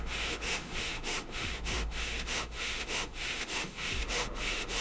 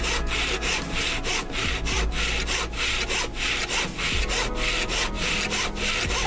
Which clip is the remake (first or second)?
first